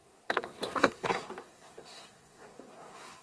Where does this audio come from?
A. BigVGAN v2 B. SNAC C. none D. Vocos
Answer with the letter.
B